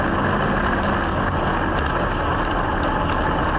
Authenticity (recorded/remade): recorded